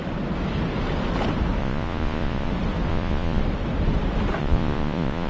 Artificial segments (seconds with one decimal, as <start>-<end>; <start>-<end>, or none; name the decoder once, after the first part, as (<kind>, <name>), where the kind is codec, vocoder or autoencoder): 1.6-2.5 (vocoder, Vocos); 2.9-3.4; 4.4-5.3